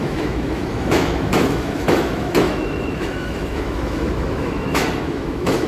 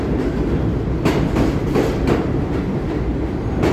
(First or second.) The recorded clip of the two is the second